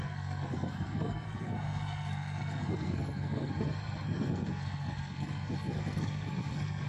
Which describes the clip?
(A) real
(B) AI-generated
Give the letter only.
B